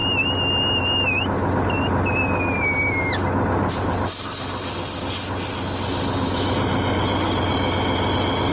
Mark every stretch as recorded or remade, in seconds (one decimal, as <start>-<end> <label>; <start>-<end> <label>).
0.0-8.5 recorded